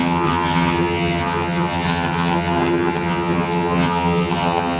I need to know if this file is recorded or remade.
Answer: remade